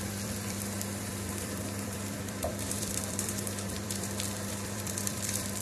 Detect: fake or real fake